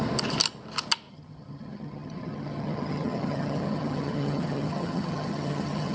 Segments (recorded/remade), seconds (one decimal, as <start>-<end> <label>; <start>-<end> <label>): 0.0-1.1 recorded; 1.1-5.9 remade